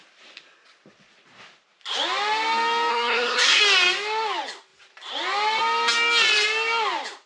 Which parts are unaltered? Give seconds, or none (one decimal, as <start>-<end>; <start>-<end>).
0.0-2.9; 3.6-7.3